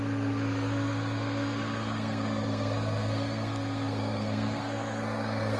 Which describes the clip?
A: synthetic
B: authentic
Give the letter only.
A